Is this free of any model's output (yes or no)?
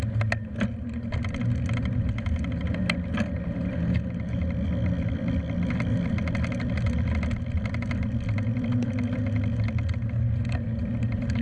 yes